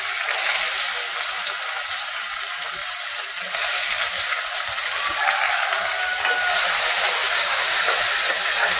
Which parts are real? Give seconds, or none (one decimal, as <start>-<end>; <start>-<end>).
0.0-7.2; 7.8-8.8